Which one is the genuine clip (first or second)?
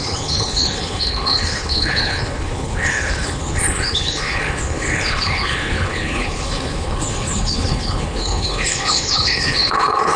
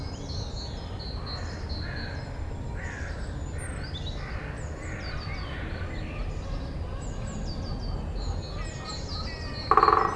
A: second